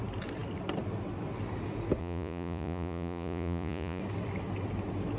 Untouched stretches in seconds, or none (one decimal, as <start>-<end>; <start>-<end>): 0.0-2.0; 4.0-5.2